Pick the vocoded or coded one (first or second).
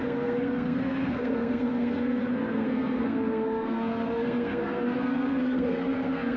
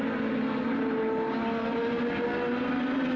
first